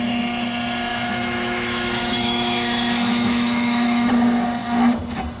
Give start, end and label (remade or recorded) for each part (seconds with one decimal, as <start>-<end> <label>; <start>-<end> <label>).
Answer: 0.0-0.9 recorded; 0.9-4.1 remade; 4.1-5.4 recorded